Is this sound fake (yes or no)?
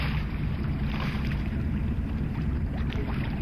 yes